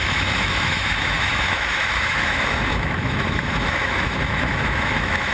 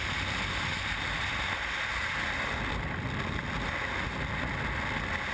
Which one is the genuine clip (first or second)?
second